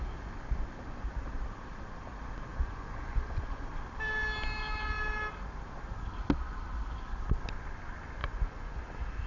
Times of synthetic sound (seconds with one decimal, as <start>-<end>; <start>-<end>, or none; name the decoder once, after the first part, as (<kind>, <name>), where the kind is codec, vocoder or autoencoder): 2.5-3.7 (vocoder, Vocos); 8.2-8.8

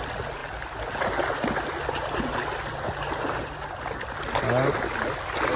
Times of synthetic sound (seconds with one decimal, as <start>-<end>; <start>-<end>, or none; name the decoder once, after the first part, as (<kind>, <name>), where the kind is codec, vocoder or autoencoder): none

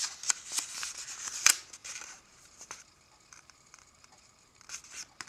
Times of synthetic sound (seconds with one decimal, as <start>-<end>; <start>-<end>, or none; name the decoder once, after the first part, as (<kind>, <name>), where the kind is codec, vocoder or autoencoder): 1.8-4.7 (vocoder, BigVGAN v2)